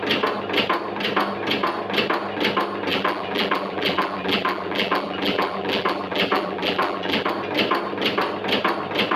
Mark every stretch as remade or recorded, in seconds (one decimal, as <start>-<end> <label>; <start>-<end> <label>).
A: 0.0-2.9 recorded; 2.9-7.3 remade; 7.3-9.2 recorded